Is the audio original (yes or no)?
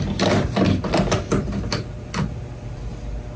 yes